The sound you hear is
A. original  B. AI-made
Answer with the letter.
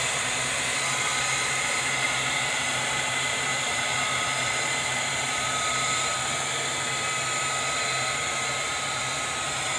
B